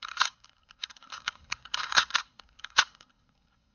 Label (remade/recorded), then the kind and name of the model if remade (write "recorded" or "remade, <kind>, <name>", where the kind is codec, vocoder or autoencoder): remade, codec, SNAC